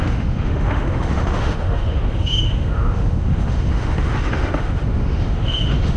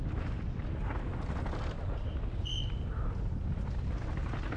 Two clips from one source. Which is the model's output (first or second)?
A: first